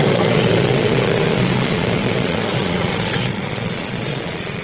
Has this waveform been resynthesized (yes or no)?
yes